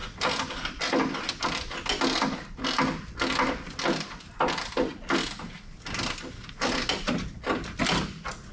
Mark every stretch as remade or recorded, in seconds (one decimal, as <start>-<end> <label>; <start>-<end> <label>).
0.0-8.5 recorded

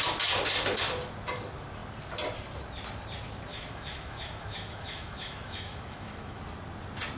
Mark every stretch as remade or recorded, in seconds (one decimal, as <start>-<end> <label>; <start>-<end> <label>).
0.0-3.5 recorded; 3.5-6.4 remade; 6.4-7.2 recorded

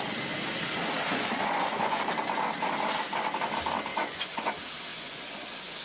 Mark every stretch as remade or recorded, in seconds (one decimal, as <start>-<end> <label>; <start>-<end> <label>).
0.0-1.1 recorded; 1.1-2.0 remade; 2.0-3.9 recorded; 3.9-4.5 remade; 4.5-4.9 recorded; 4.9-5.8 remade